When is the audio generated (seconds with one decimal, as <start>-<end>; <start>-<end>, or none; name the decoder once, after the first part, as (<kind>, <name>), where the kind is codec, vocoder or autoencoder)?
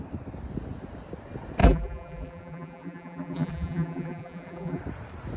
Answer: 1.6-4.8 (vocoder, BigVGAN v2)